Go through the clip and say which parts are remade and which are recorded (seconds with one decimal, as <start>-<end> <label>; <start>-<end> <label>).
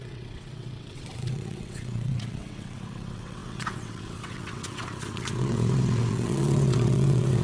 0.0-7.4 remade